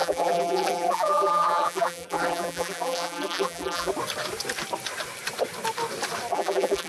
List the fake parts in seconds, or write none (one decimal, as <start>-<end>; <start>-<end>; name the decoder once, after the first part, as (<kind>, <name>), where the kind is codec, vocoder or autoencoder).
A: 0.0-3.9 (vocoder, BigVGAN v2); 6.3-6.9